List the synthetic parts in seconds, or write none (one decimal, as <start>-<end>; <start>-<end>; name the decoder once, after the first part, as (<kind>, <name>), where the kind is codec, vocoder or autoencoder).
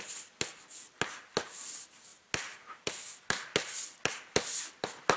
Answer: none